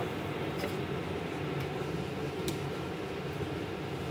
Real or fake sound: real